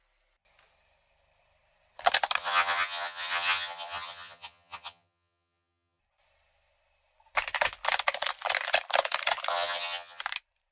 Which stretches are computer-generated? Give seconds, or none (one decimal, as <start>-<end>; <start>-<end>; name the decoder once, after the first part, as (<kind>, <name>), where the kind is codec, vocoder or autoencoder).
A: 2.4-6.0 (vocoder, HiFi-GAN); 9.5-10.2